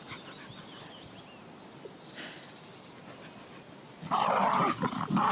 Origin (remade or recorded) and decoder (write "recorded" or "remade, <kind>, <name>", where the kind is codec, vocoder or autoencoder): recorded